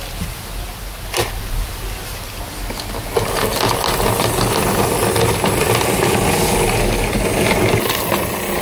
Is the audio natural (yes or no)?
yes